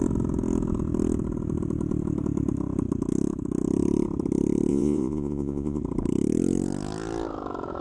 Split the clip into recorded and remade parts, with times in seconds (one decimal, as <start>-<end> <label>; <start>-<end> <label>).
0.0-4.7 recorded; 4.7-5.8 remade; 5.8-7.8 recorded